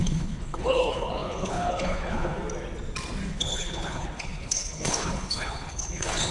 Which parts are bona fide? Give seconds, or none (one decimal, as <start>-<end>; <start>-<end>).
2.4-3.3